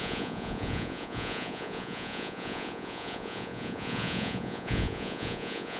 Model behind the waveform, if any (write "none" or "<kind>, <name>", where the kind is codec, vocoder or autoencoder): vocoder, Vocos